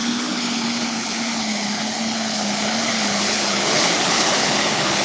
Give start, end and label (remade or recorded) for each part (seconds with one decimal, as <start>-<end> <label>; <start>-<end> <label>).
0.0-5.0 remade